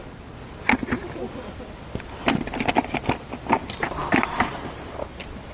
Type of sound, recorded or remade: recorded